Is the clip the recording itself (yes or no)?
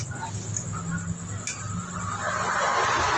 yes